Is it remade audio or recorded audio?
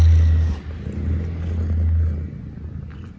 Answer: recorded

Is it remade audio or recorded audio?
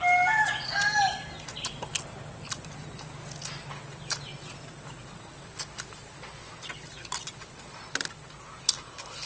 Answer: recorded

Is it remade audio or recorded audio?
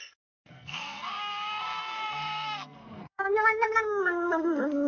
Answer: remade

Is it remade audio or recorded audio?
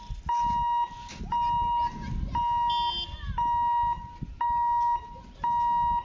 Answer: recorded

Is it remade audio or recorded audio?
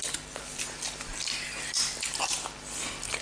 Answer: recorded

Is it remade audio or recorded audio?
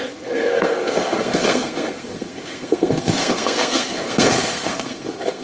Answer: remade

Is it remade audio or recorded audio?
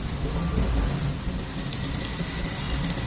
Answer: recorded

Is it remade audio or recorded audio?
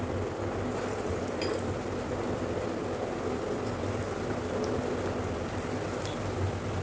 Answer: recorded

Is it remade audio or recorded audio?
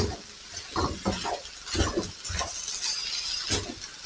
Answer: recorded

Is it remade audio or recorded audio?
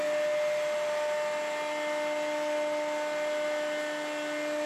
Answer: recorded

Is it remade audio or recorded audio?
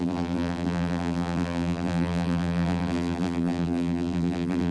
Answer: remade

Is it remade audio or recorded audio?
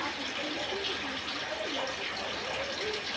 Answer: recorded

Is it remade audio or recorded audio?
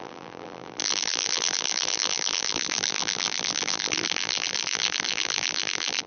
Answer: remade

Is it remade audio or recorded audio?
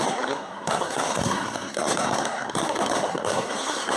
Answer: remade